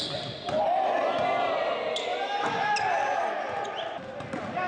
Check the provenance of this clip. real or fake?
real